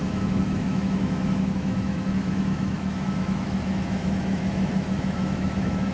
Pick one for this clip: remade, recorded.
remade